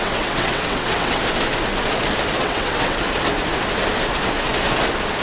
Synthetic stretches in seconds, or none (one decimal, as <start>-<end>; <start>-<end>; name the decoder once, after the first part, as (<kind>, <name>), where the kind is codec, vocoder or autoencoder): 0.0-1.2 (vocoder, WaveNeXt); 2.4-3.0